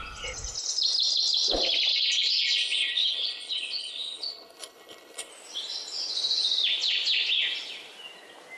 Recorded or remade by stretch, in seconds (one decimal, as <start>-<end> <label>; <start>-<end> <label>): 0.0-1.9 recorded; 1.9-5.3 remade; 5.3-8.6 recorded